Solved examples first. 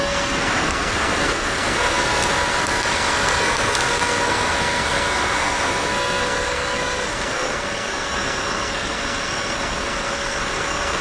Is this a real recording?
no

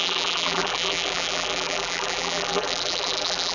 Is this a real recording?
no